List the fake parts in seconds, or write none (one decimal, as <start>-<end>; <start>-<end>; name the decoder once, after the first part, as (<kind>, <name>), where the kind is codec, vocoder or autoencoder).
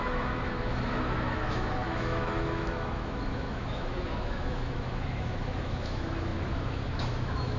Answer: 0.0-7.6 (autoencoder, DAC-VAE)